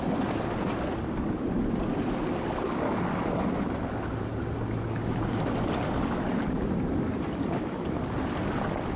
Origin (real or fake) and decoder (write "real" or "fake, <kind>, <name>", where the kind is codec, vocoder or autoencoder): real